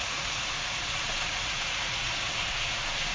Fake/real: fake